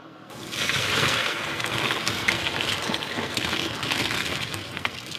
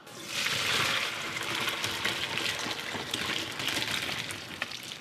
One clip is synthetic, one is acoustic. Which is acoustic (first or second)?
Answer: second